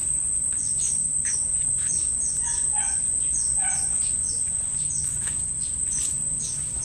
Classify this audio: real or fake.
fake